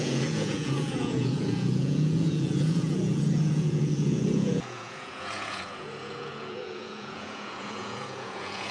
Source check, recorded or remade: remade